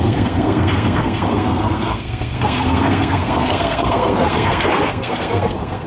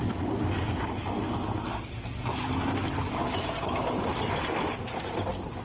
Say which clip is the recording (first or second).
second